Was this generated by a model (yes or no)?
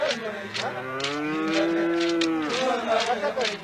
no